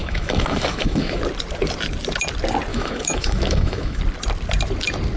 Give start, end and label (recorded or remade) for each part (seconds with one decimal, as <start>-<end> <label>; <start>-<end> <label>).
0.0-1.2 remade; 1.2-2.7 recorded; 2.7-4.0 remade; 4.0-5.2 recorded

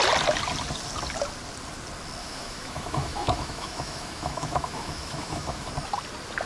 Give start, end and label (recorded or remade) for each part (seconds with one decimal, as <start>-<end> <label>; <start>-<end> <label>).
0.0-2.2 recorded; 2.2-5.7 remade; 5.7-6.5 recorded

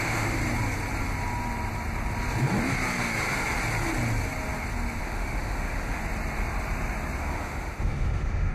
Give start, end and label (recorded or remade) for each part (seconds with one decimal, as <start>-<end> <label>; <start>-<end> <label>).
0.0-0.4 remade; 0.4-5.0 recorded; 5.0-6.0 remade; 6.0-7.2 recorded; 7.2-8.5 remade

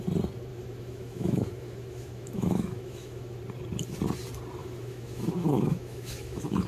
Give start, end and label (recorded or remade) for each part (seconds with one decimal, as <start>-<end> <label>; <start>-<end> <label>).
0.0-0.5 recorded; 0.5-3.4 remade; 3.4-4.6 recorded; 4.6-6.7 remade